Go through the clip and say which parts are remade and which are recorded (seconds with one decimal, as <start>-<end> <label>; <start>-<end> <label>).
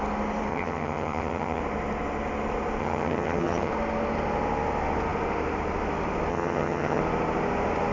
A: 0.0-0.5 recorded; 0.5-1.6 remade; 1.6-2.8 recorded; 2.8-3.7 remade; 3.7-6.3 recorded; 6.3-7.0 remade; 7.0-7.9 recorded